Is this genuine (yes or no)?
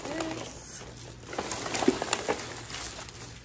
yes